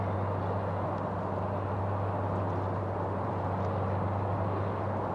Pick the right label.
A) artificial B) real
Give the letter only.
B